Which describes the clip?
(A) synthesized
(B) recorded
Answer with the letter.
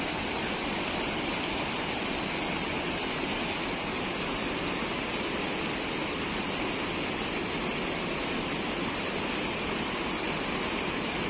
B